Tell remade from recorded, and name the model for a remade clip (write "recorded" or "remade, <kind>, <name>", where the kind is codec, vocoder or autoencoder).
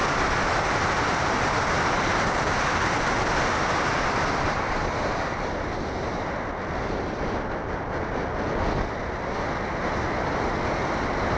recorded